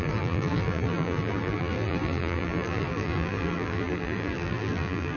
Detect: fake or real fake